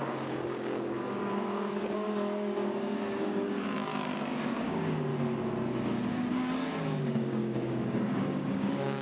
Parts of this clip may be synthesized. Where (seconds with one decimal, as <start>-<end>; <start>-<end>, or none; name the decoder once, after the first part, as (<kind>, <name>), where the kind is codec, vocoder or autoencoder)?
0.0-5.1 (codec, DAC); 6.1-9.0